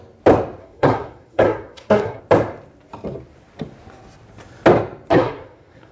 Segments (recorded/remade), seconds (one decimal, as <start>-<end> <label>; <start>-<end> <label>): 0.0-0.6 recorded; 0.6-2.2 remade; 2.2-5.1 recorded; 5.1-5.9 remade